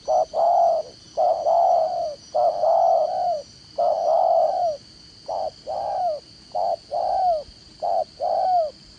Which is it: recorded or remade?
recorded